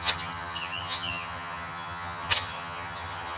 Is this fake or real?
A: fake